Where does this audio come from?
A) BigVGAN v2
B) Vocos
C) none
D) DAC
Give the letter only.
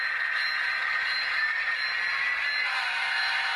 C